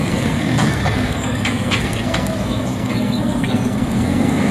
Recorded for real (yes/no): no